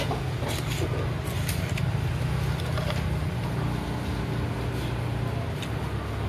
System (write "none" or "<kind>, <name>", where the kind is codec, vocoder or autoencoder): none